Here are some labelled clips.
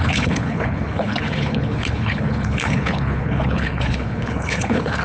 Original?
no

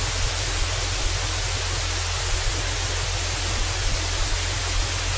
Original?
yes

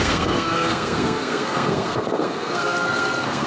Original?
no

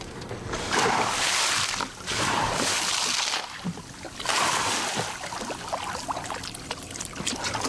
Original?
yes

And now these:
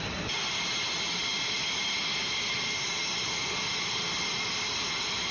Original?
yes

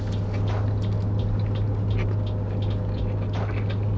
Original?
yes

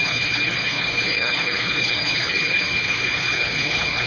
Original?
no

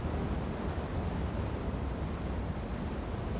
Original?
yes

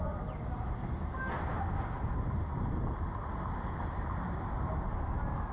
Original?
yes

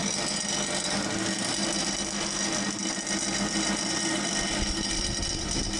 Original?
yes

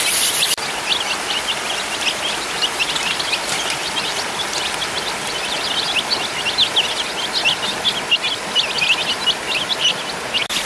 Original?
yes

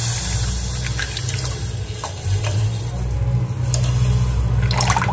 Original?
yes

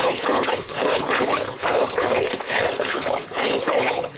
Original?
no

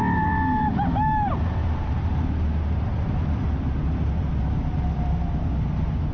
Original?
yes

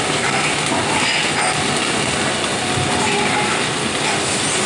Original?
yes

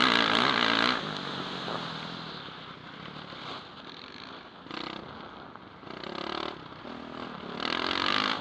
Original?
yes